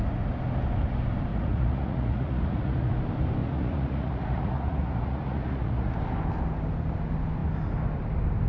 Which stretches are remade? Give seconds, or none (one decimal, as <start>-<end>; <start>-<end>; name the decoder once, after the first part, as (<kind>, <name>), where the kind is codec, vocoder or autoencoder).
1.3-2.9 (vocoder, Vocos); 3.4-5.9